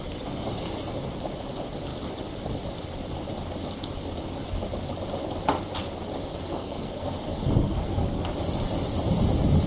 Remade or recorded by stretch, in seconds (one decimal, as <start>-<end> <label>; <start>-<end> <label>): 0.0-6.3 recorded; 6.3-8.2 remade; 8.2-9.7 recorded